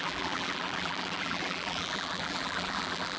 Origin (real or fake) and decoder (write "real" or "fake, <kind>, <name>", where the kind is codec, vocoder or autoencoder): fake, vocoder, BigVGAN v2